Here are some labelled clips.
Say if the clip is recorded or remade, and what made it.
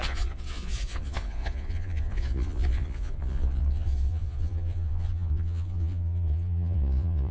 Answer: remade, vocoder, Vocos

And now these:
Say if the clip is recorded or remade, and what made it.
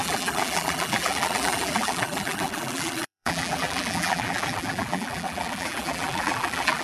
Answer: remade, vocoder, BigVGAN v2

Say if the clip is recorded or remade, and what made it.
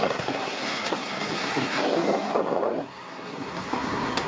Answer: remade, codec, SNAC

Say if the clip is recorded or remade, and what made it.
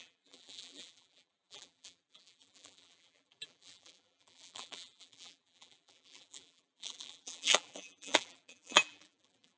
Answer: remade, vocoder, BigVGAN v2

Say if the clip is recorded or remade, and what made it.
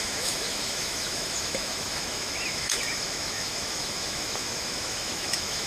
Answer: remade, autoencoder, DAC-VAE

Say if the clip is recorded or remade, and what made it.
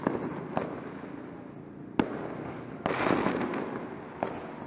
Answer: recorded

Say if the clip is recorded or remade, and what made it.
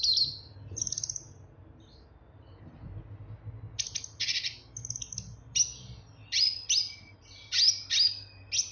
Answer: recorded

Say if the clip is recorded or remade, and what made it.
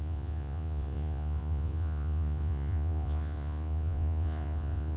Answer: remade, vocoder, Vocos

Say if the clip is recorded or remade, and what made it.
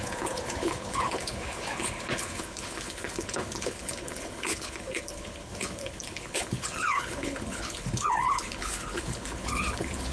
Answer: remade, codec, HILCodec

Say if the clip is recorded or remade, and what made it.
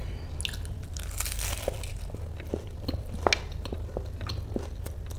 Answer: recorded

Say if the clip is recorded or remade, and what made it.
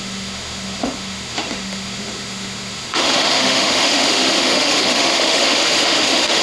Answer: remade, autoencoder, DAC-VAE